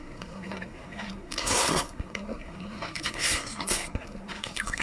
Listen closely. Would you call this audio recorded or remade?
remade